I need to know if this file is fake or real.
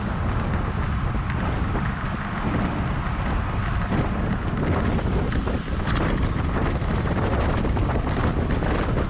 real